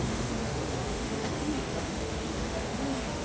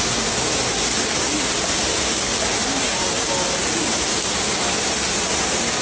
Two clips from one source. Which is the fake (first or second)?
first